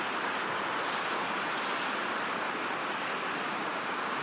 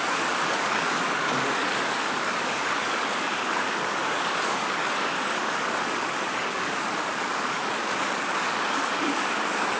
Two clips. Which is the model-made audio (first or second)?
second